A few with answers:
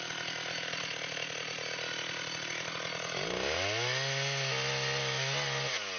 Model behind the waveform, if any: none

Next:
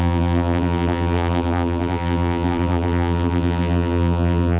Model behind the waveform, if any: vocoder, BigVGAN v2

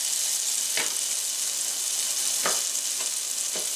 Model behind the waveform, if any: none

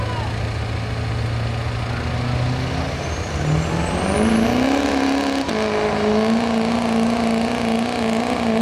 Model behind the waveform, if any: none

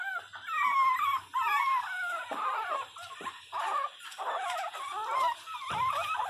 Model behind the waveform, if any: none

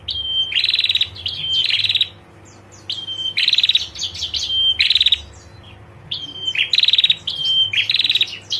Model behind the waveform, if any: none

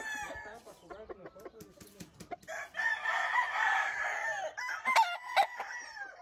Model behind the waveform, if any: none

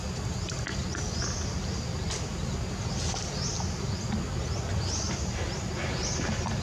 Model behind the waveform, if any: none